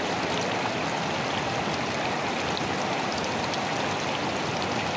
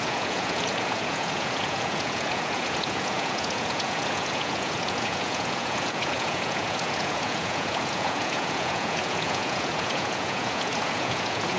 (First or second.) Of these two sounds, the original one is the first